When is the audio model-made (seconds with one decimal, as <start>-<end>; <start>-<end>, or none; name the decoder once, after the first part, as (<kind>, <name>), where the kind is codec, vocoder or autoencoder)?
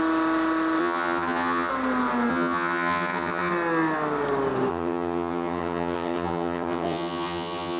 0.8-1.7 (vocoder, HiFi-GAN); 2.3-3.5; 4.7-7.8